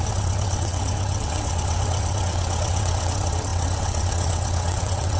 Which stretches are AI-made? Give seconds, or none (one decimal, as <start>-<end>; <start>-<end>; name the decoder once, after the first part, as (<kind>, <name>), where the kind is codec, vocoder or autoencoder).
0.0-5.2 (vocoder, WaveNeXt)